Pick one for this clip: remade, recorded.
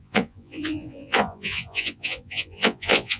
remade